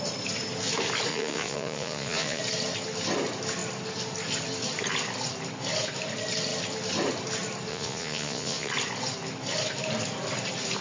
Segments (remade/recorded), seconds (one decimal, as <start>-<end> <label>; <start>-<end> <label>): 0.0-1.1 recorded; 1.1-2.4 remade; 2.4-7.7 recorded; 7.7-8.7 remade; 8.7-10.8 recorded